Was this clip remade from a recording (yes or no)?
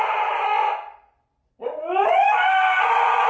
no